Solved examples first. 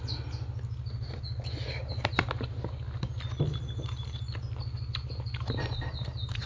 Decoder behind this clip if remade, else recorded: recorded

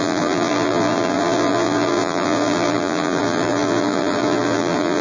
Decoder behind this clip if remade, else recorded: remade, vocoder, BigVGAN v2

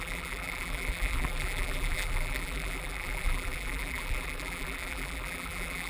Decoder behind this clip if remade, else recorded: remade, vocoder, BigVGAN v2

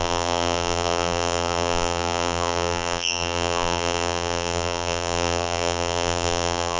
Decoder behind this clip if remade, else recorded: remade, vocoder, BigVGAN v2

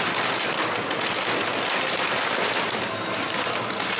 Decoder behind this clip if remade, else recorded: recorded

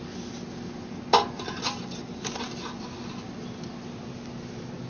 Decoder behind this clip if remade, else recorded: recorded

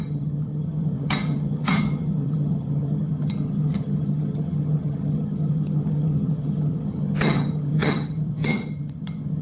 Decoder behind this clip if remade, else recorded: remade, vocoder, HiFi-GAN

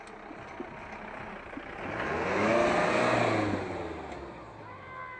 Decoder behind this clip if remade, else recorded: recorded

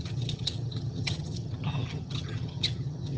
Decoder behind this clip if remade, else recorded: remade, vocoder, HiFi-GAN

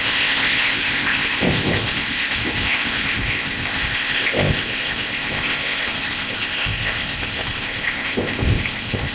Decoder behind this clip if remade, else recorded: remade, codec, ZipCodec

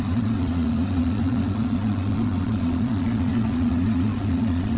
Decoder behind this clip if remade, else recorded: remade, vocoder, Vocos